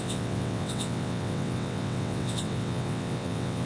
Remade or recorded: remade